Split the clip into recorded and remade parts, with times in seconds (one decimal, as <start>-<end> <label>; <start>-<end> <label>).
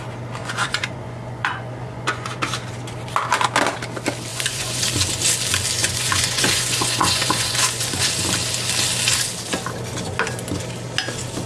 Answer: 0.0-0.4 recorded; 0.4-2.4 remade; 2.4-4.3 recorded; 4.3-4.8 remade; 4.8-5.8 recorded; 5.8-8.1 remade; 8.1-11.5 recorded